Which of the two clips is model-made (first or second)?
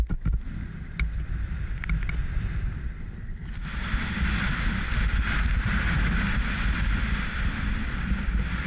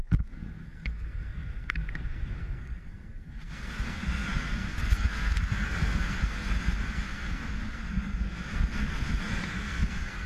second